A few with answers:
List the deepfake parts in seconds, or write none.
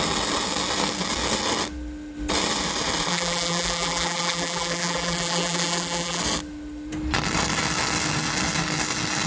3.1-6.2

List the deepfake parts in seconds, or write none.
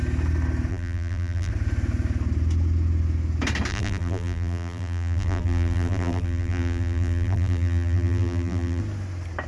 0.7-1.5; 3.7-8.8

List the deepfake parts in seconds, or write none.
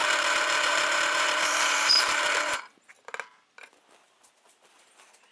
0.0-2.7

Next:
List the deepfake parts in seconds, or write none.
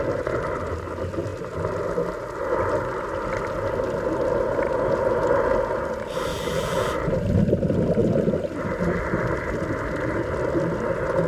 6.3-6.9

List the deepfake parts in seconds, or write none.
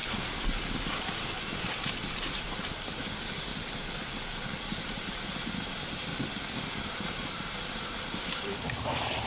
0.0-3.5; 4.6-6.1; 6.6-9.3